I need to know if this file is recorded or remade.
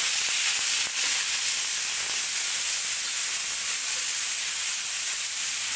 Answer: recorded